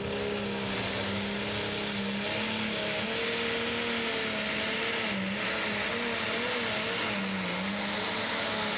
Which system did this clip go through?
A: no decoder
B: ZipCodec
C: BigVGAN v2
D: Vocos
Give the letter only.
A